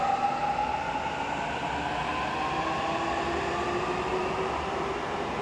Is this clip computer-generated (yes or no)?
no